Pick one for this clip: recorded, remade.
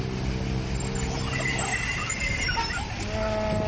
recorded